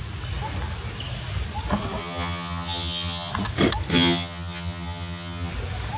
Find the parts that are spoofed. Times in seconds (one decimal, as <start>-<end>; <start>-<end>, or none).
2.0-3.3; 3.9-5.5